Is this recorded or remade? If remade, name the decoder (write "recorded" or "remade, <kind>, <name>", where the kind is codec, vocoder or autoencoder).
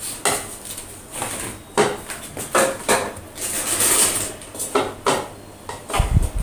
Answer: recorded